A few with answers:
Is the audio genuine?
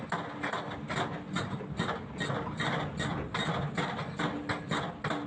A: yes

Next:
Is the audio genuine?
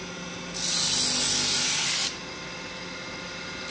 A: yes